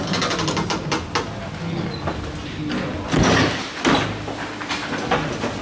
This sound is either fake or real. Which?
real